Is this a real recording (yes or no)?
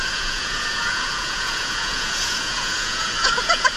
no